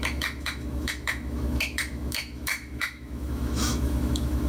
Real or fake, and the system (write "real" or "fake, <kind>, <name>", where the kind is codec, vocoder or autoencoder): fake, autoencoder, DAC-VAE